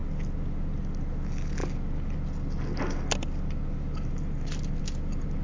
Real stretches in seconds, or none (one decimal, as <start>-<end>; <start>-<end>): 0.0-5.4